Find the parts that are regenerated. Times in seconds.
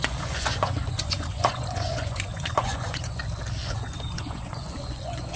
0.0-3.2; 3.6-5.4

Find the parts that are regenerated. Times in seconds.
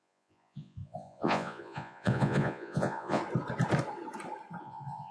0.0-3.2; 4.6-5.1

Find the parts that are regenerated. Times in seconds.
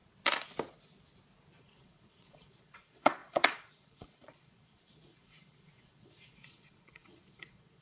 1.6-7.8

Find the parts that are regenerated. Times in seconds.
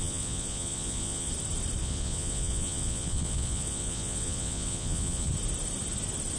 0.0-1.3; 1.8-5.3